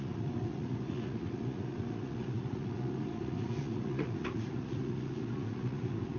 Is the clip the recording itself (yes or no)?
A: no